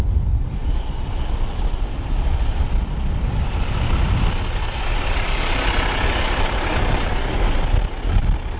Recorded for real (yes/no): yes